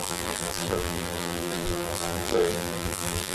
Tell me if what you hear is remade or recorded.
remade